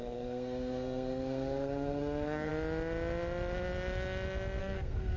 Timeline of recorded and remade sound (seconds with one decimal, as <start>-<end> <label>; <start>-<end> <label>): 0.0-2.5 remade; 2.5-4.6 recorded; 4.6-5.2 remade